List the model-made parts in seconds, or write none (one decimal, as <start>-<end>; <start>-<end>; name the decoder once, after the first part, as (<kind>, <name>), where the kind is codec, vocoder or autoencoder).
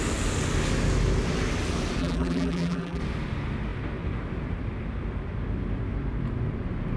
2.0-3.0 (vocoder, BigVGAN v2)